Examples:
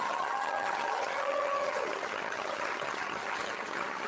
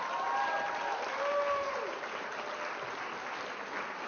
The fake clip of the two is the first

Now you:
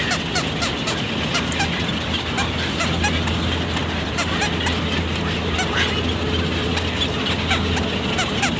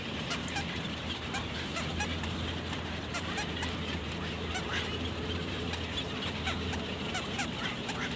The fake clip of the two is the second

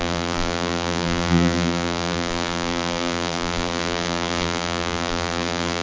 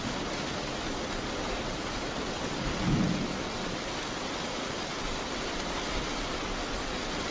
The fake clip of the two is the first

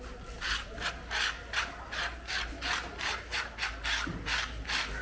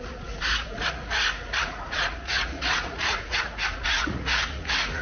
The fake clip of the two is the second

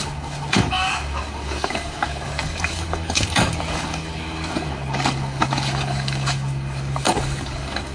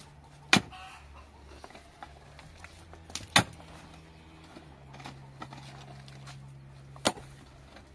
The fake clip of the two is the first